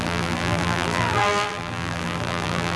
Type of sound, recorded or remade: remade